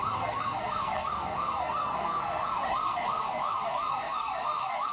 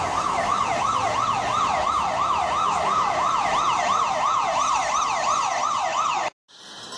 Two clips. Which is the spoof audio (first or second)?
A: first